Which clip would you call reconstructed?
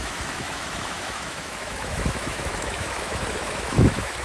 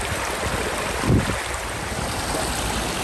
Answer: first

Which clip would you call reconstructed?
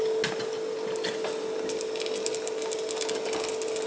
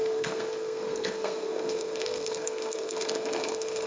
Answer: second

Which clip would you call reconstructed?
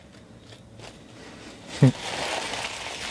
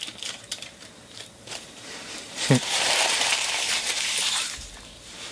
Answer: second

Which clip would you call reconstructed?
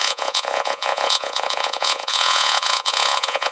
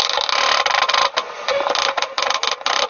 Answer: first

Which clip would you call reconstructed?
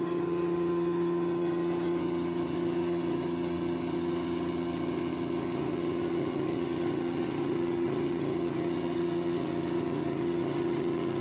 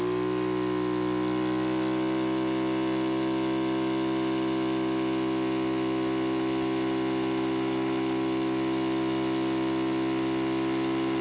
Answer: first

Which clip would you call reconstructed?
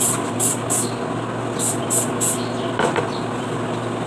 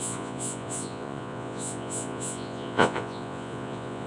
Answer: second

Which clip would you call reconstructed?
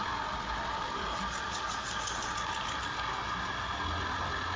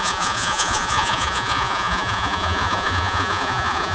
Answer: second